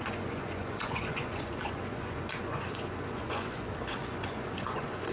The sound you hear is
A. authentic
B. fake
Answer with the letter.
B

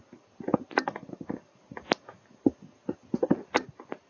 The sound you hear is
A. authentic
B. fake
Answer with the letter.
A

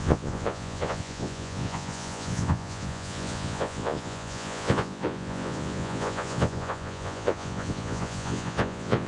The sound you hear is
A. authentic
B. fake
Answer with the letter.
B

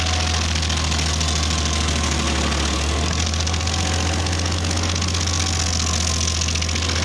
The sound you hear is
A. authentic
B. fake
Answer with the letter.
A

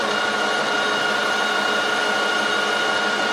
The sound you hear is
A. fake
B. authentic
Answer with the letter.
B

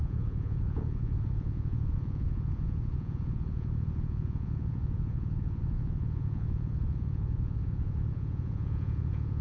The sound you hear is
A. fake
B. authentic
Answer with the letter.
A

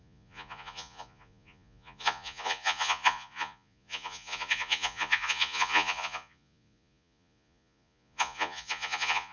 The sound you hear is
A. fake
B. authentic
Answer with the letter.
A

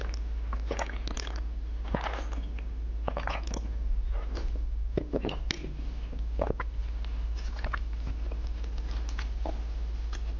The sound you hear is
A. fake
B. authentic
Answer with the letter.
B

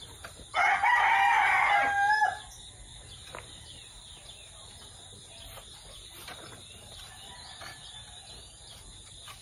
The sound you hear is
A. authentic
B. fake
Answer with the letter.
A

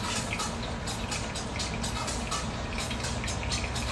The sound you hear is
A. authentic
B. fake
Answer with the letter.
A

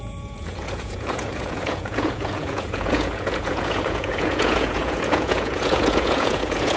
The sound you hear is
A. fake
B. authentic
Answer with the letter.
A